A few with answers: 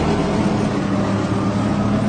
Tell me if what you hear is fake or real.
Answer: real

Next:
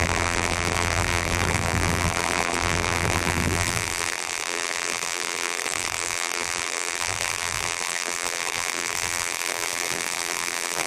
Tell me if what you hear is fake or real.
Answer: fake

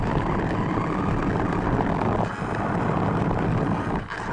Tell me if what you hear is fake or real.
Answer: real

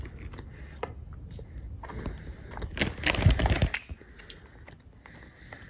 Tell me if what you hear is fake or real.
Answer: real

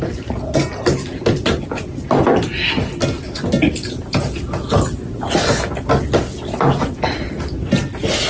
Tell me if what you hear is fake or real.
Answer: real